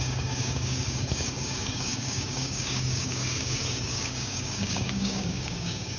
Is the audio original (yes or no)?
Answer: no